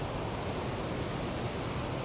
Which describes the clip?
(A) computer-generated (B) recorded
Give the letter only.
B